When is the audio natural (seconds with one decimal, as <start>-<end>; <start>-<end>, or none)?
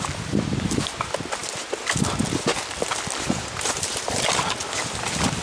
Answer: 0.0-5.4